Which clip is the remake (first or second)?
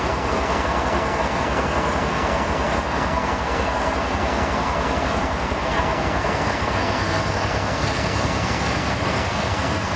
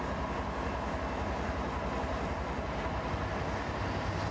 first